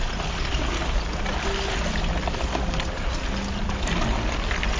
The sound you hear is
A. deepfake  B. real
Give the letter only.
B